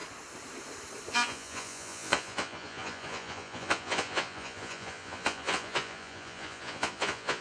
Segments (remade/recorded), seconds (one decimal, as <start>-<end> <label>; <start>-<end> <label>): 0.0-1.1 recorded; 1.1-7.4 remade